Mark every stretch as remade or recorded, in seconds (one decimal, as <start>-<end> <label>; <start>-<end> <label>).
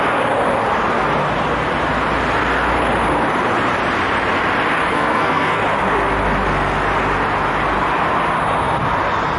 0.0-4.9 recorded; 4.9-5.6 remade; 5.6-9.4 recorded